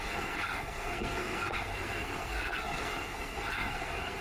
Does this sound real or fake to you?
fake